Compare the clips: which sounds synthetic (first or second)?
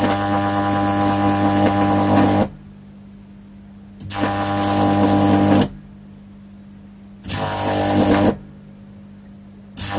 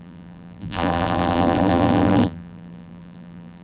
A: second